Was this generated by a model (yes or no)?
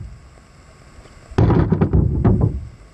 no